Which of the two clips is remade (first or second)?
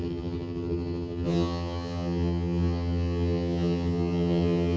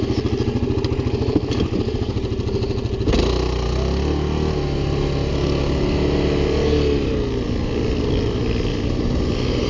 first